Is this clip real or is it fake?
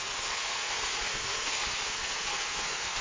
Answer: fake